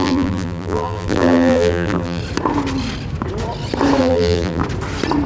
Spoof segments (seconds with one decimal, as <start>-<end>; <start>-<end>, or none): 0.0-2.2; 4.0-4.6